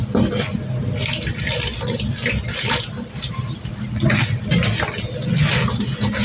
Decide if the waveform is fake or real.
real